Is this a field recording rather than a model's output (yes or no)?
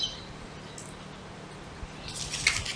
yes